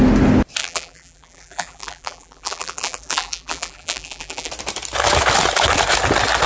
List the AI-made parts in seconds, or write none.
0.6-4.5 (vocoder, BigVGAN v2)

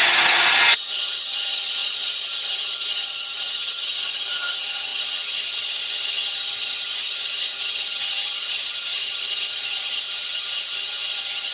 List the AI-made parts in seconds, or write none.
0.0-11.5 (vocoder, HiFi-GAN)

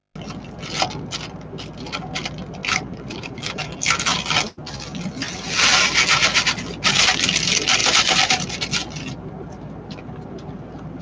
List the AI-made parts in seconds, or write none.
2.6-3.4 (vocoder, BigVGAN v2); 7.8-8.7

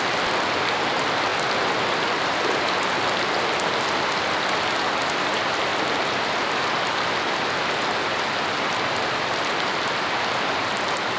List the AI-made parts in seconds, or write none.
none

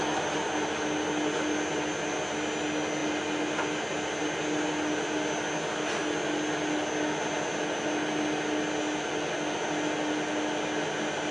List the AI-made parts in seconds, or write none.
none